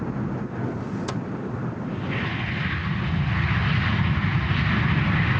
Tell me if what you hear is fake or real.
real